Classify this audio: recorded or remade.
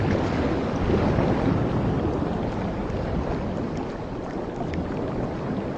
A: recorded